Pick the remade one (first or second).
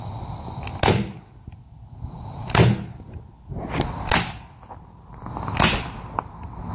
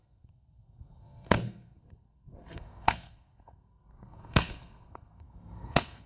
second